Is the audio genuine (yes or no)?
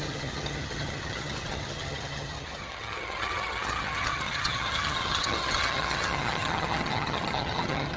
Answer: no